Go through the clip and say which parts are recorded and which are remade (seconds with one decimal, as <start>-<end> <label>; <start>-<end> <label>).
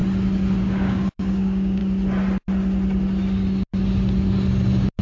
0.0-0.6 recorded; 0.6-1.8 remade; 1.8-5.0 recorded